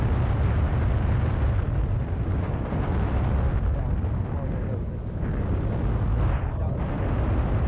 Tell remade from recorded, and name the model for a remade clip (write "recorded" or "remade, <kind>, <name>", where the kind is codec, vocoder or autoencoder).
recorded